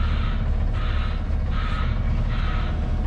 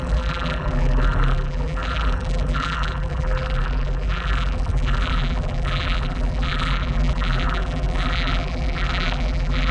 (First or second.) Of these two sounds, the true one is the first